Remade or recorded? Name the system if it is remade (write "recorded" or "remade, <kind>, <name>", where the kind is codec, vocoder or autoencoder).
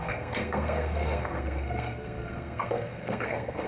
remade, codec, SNAC